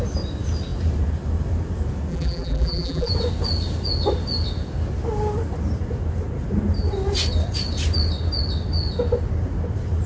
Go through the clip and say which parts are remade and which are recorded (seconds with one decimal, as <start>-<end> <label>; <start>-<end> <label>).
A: 0.0-2.1 recorded; 2.1-3.1 remade; 3.1-10.1 recorded